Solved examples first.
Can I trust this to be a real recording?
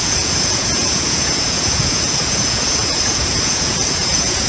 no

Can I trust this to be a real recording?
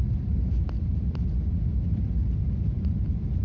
yes